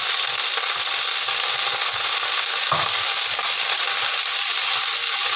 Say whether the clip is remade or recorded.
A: recorded